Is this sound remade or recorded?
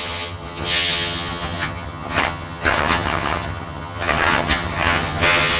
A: remade